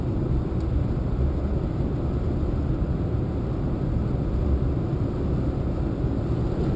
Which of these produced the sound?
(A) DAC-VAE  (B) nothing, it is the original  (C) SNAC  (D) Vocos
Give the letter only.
B